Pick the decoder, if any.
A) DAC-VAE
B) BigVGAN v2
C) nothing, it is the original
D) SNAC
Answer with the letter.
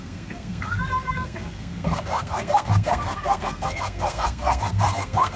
D